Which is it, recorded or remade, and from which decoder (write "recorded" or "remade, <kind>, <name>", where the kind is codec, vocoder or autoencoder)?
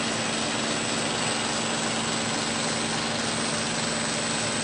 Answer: recorded